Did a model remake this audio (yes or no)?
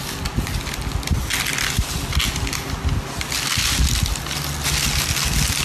no